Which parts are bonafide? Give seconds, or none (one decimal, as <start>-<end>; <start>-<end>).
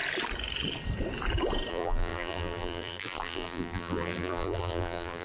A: 0.0-1.7